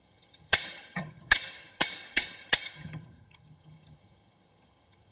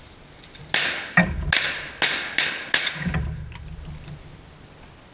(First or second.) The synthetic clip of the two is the first